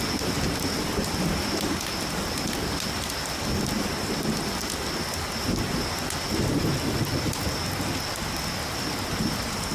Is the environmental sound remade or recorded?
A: recorded